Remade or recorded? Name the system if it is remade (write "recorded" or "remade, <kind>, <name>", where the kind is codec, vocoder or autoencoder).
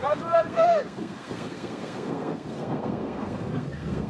remade, codec, SNAC